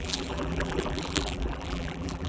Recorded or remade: remade